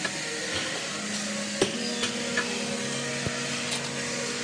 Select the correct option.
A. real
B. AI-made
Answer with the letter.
A